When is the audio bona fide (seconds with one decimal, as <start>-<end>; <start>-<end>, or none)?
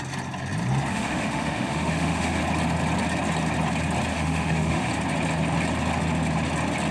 0.0-0.9; 2.4-4.1; 4.9-6.9